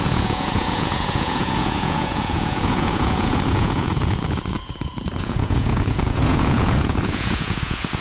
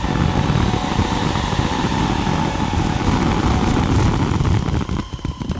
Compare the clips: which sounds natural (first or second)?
second